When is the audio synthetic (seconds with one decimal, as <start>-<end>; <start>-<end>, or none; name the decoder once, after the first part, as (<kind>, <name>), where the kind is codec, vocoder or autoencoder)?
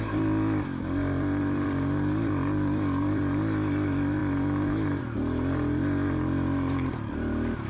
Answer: 0.0-7.7 (vocoder, BigVGAN v2)